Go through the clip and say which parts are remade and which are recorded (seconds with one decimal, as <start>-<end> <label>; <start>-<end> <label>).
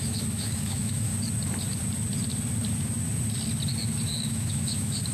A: 0.0-1.1 remade; 1.1-4.2 recorded; 4.2-5.1 remade